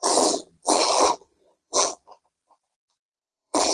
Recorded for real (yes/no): no